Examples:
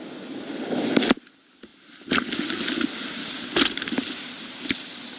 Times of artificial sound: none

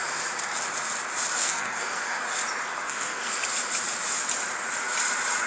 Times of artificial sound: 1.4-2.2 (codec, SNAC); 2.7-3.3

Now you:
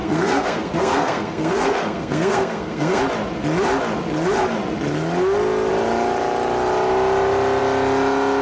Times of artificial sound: 0.0-3.0 (codec, SNAC)